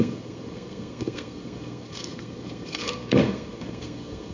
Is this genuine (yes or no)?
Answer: no